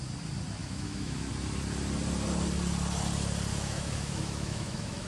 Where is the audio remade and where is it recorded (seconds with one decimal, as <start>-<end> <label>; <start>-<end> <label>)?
0.0-0.6 recorded; 0.6-1.3 remade; 1.3-3.5 recorded; 3.5-5.1 remade